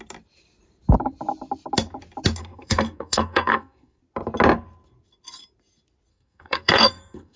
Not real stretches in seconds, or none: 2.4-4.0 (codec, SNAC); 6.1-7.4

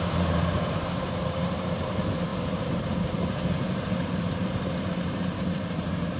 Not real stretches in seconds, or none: 0.0-6.2 (vocoder, BigVGAN v2)

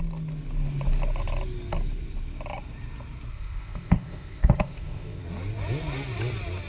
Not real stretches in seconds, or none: 3.3-5.2 (codec, ZipCodec)